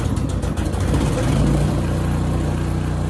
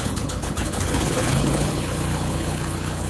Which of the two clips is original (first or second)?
first